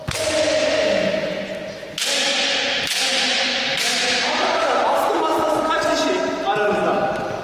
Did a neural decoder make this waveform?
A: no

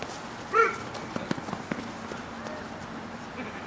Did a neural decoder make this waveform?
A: no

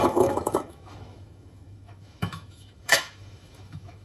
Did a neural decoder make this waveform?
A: yes